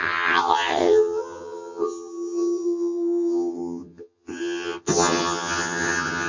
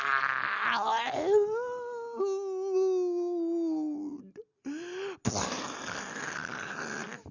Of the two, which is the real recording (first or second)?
second